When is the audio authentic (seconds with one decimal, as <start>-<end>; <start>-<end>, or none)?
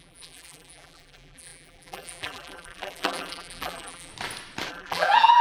4.1-4.7